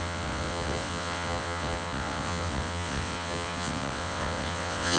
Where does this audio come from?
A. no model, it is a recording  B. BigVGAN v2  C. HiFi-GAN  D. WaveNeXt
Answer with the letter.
D